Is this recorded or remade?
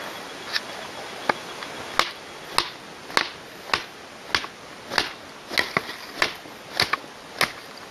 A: recorded